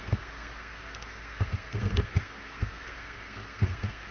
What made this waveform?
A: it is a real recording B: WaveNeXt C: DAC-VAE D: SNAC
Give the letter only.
D